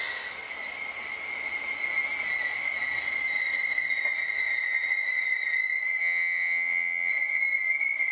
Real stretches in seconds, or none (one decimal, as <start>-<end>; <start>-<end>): 0.0-6.0; 7.1-8.1